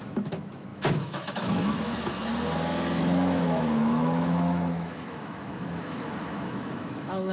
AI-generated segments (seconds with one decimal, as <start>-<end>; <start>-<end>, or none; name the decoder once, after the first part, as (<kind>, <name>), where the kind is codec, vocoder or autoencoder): 0.0-2.3 (autoencoder, DAC-VAE); 3.0-7.3